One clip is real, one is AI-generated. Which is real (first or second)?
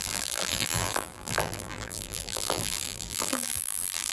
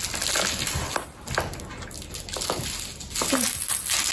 second